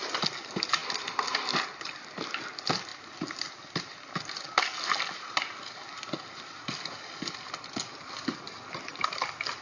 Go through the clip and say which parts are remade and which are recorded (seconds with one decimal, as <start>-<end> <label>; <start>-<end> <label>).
0.0-9.6 recorded